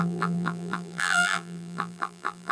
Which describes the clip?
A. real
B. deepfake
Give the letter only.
B